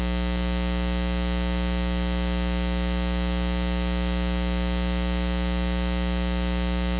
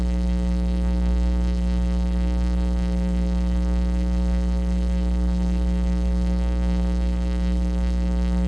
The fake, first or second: second